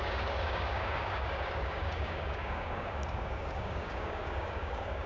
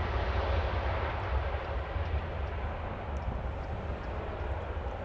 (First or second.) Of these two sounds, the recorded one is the second